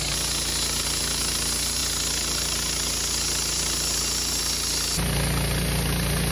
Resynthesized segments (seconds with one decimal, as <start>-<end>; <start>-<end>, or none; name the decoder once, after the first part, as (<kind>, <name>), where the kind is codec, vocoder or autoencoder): none